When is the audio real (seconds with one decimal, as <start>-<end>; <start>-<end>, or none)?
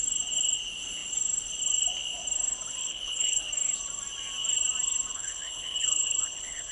0.0-2.8; 3.4-5.1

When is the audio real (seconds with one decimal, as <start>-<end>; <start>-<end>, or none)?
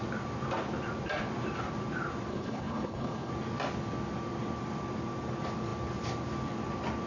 0.0-2.3; 3.3-7.1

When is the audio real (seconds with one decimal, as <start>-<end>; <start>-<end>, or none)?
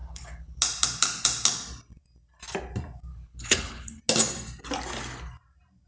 0.6-3.1; 4.0-5.9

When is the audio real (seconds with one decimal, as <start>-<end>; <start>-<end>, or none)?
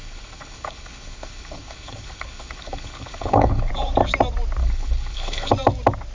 3.7-4.6; 5.5-6.1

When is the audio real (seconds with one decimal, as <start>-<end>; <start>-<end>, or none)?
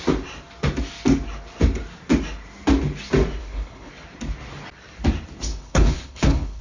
0.0-3.4; 3.9-5.5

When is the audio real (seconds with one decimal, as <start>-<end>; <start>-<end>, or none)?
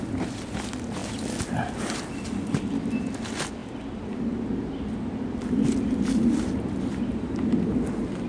0.0-8.3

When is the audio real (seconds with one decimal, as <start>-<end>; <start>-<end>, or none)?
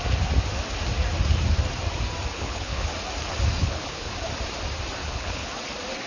0.0-2.3; 2.9-3.6; 4.1-5.0; 5.5-6.1